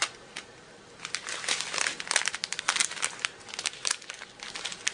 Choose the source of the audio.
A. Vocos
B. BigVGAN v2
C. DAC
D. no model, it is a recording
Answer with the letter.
D